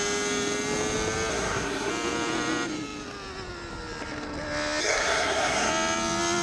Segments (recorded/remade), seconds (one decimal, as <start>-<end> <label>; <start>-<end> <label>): 0.0-1.3 recorded; 1.3-1.9 remade; 1.9-4.8 recorded; 4.8-5.7 remade; 5.7-6.4 recorded